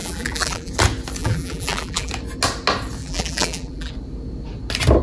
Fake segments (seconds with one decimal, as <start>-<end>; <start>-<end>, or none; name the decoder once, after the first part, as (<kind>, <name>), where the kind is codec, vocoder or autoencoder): 0.0-0.7 (vocoder, BigVGAN v2); 1.2-2.1; 3.0-3.9